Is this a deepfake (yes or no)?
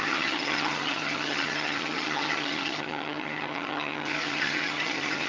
yes